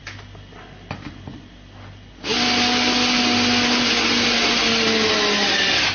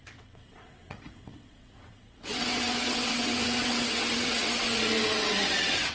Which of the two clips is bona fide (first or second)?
first